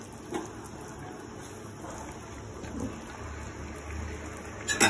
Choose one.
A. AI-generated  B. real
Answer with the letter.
B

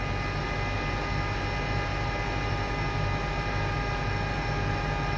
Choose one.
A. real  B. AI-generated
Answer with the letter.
A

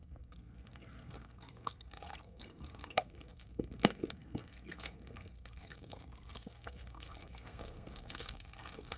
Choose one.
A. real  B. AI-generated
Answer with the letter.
B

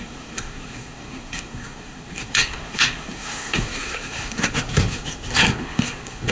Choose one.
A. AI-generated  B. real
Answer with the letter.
A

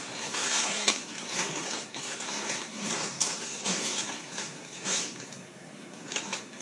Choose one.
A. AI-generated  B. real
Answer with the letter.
A